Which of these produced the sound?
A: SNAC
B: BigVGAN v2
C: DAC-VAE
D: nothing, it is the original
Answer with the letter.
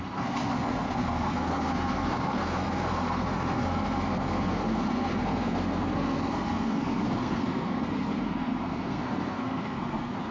A